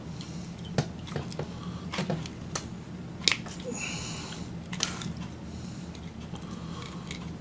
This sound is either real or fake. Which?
real